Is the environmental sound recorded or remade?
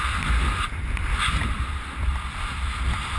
recorded